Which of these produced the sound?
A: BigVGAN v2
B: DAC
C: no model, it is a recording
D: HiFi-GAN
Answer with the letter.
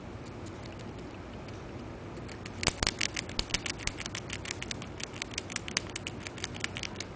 C